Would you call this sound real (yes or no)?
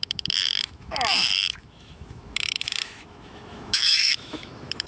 no